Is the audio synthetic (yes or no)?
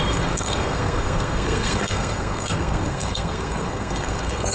yes